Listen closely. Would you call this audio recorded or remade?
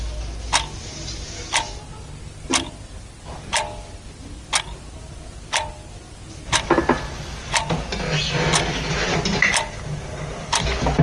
recorded